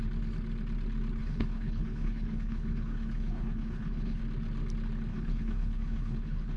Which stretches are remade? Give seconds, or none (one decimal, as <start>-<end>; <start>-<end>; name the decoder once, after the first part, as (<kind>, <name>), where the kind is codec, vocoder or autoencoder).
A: 1.2-4.2 (codec, HILCodec); 5.1-6.6